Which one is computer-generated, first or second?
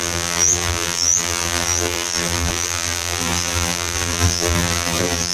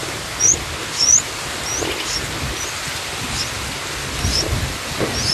first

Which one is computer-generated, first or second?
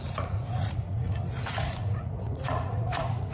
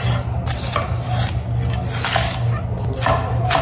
first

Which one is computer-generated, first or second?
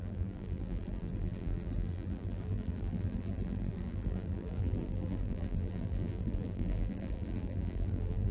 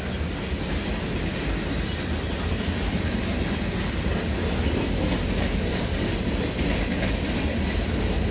first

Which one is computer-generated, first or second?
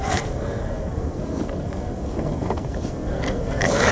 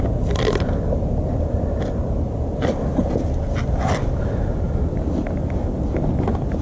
first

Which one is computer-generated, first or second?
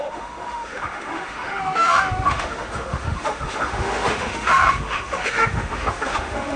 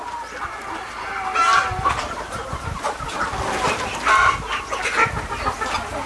first